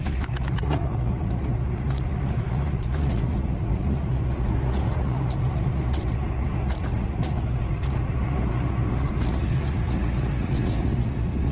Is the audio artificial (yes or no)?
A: yes